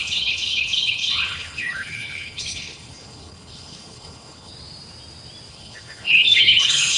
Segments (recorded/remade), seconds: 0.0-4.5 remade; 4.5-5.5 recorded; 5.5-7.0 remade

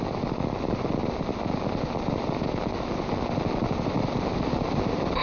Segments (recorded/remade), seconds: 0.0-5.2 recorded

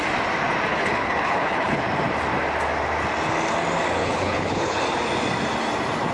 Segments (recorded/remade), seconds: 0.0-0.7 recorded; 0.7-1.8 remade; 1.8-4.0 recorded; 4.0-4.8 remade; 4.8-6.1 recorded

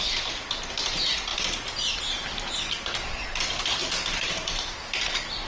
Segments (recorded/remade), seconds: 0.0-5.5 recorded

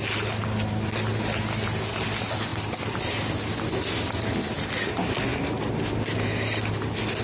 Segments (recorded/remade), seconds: 0.0-7.2 recorded

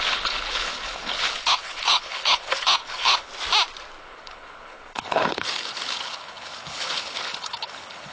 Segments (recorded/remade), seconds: 0.0-3.3 remade; 3.3-4.0 recorded; 4.0-8.1 remade